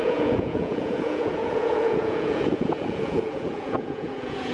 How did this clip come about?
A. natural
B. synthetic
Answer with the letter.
B